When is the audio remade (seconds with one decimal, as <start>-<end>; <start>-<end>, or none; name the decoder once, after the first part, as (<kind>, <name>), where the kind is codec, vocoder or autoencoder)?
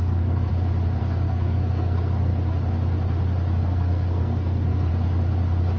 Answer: 0.0-0.5 (codec, SNAC); 1.0-2.3; 3.6-4.9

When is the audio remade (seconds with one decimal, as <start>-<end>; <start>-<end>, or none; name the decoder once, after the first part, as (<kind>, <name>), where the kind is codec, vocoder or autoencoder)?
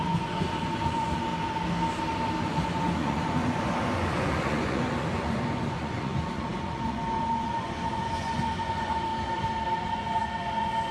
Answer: 0.0-1.3 (vocoder, Vocos); 2.4-9.1; 9.9-10.9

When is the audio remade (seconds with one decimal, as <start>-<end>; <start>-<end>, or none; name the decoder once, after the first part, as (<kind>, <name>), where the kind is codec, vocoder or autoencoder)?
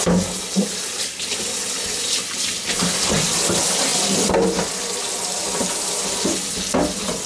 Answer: none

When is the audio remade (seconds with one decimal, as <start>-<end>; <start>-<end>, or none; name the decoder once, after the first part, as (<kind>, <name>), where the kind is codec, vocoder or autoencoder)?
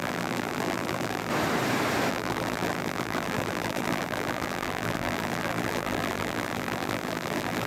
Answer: 0.0-1.3 (vocoder, BigVGAN v2); 2.1-7.7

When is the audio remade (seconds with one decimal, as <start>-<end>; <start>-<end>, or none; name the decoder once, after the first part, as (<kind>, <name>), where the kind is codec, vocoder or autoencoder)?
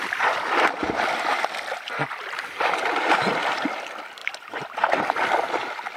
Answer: 0.8-1.3 (vocoder, BigVGAN v2)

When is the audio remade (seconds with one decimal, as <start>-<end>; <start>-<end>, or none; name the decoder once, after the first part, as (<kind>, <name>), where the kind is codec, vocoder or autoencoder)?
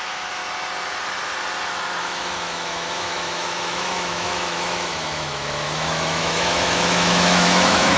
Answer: 0.0-0.4 (autoencoder, DAC-VAE); 2.0-8.0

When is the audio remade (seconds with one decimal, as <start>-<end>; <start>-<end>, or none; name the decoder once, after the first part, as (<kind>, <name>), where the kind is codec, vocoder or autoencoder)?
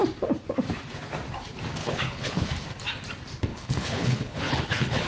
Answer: 1.8-2.5 (codec, HILCodec); 3.5-5.1